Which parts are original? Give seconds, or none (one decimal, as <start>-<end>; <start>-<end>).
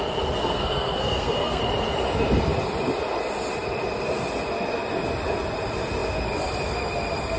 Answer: 0.0-0.4; 1.6-7.4